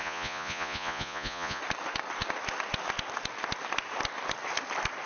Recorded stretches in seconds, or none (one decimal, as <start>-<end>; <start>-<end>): 1.6-5.1